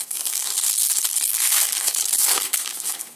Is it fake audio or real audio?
fake